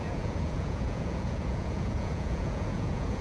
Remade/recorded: remade